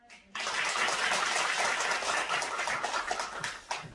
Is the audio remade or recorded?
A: recorded